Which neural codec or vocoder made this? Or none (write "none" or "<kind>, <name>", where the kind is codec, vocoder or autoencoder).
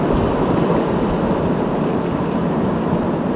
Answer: none